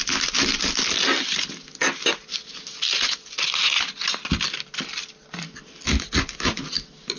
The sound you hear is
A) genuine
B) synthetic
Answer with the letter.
A